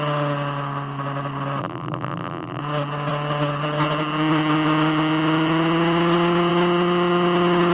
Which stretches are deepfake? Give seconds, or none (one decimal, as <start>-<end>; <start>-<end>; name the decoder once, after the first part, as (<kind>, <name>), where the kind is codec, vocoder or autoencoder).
1.6-2.6 (vocoder, BigVGAN v2)